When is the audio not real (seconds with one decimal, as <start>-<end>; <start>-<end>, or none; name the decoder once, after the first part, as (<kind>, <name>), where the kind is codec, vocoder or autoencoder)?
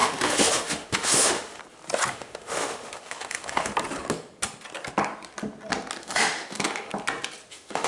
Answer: 0.0-1.6 (autoencoder, DAC-VAE); 2.1-3.7; 6.0-6.9; 7.5-7.9